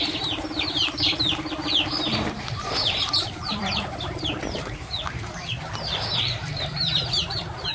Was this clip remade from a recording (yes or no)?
yes